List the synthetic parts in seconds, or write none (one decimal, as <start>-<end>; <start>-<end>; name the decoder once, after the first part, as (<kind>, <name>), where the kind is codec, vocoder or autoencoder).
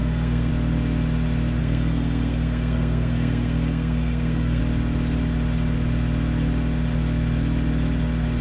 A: 0.0-0.5 (codec, SNAC); 1.6-4.6